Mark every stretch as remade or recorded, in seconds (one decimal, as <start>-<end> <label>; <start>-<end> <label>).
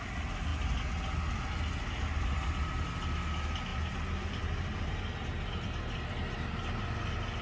0.0-7.4 recorded